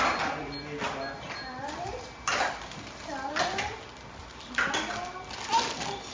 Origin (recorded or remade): recorded